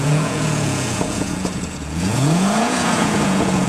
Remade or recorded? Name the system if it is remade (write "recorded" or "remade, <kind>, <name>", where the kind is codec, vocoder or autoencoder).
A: remade, vocoder, Vocos